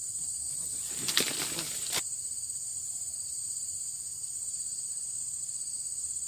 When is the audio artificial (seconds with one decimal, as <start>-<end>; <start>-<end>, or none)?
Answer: none